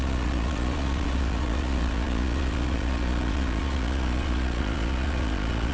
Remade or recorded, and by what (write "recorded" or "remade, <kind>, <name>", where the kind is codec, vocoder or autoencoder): remade, vocoder, Vocos